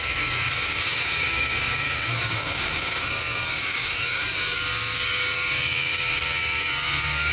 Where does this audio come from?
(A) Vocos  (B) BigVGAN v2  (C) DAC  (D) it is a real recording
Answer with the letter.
C